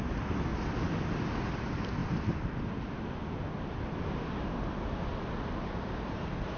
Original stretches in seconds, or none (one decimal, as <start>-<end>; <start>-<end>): 0.5-1.4; 2.0-6.0